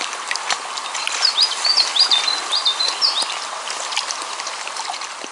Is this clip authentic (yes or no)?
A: yes